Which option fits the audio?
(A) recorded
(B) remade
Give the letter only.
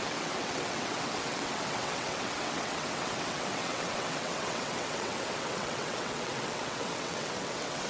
B